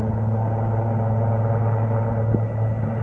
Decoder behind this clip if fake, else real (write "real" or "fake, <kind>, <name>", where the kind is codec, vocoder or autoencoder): real